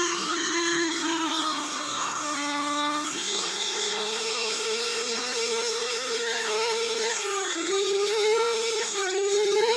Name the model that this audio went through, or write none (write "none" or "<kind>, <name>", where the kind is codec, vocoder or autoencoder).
codec, SNAC